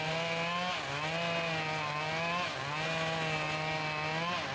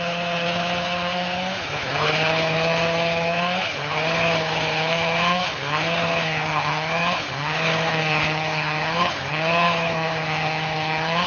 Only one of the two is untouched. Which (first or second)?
first